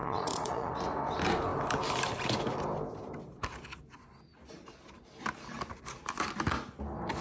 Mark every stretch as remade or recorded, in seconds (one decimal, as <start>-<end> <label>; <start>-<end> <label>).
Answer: 0.0-0.7 remade; 0.7-7.2 recorded